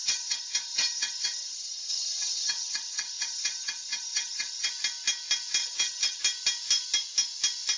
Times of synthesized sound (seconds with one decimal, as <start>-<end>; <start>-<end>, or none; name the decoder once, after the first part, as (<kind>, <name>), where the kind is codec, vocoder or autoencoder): 0.0-4.7 (vocoder, HiFi-GAN); 5.6-6.2